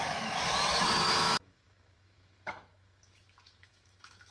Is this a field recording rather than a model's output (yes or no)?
no